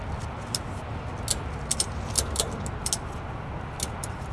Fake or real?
real